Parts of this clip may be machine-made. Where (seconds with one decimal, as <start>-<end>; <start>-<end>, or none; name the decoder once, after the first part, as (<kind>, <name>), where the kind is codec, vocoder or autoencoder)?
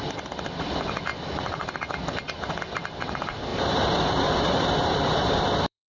0.0-1.1 (vocoder, BigVGAN v2); 2.6-5.9